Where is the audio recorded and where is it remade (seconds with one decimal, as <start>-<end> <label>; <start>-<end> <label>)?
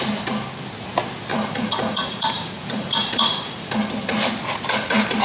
0.0-1.3 recorded; 1.3-3.7 remade; 3.7-5.2 recorded